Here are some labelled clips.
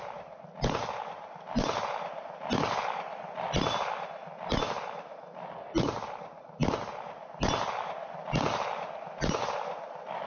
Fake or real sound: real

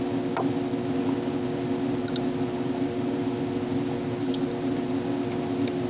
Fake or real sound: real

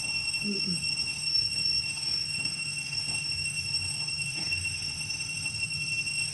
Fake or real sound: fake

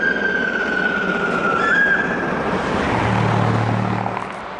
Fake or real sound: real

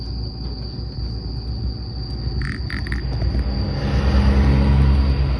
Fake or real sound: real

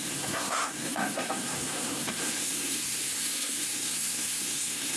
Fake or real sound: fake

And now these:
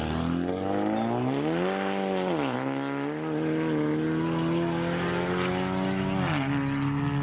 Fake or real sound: real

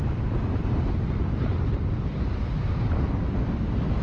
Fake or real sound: real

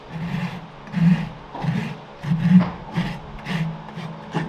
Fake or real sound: real